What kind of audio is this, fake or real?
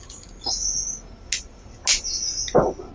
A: real